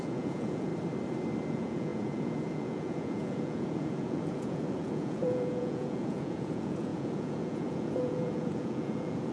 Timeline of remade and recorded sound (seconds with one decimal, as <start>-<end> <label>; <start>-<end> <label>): 0.0-0.7 remade; 0.7-1.5 recorded; 1.5-9.3 remade